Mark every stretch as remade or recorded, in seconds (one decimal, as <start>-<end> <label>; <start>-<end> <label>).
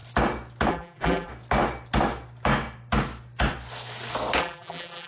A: 0.0-0.7 recorded; 0.7-1.3 remade; 1.3-4.4 recorded; 4.4-5.1 remade